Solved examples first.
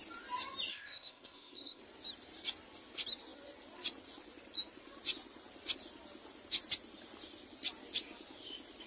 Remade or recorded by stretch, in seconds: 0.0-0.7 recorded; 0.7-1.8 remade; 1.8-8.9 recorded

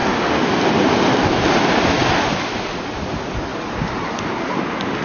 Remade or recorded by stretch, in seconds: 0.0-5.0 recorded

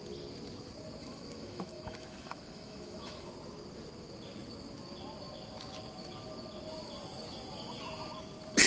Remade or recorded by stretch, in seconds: 0.0-1.0 recorded; 1.0-3.3 remade; 3.3-8.7 recorded

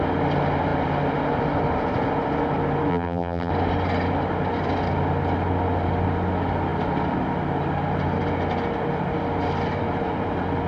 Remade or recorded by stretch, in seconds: 0.0-2.9 recorded; 2.9-3.5 remade; 3.5-10.7 recorded

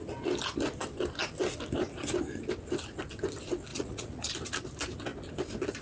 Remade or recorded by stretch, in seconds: 0.0-3.7 recorded; 3.7-4.3 remade; 4.3-5.8 recorded

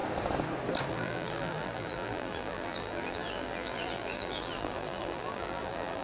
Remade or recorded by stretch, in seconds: 0.0-0.9 recorded; 0.9-6.0 remade